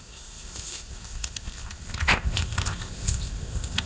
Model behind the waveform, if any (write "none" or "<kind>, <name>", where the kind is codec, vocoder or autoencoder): codec, ZipCodec